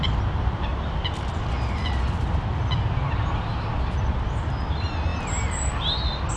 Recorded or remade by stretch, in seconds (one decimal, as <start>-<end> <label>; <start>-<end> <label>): 0.0-6.4 recorded